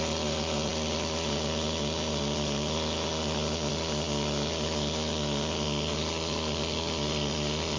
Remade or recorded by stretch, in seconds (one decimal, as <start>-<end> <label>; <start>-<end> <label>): 0.0-7.8 recorded